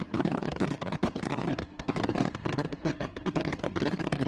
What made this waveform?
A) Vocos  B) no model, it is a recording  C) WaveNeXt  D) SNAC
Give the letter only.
D